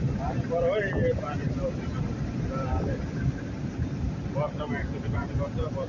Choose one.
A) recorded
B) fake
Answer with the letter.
A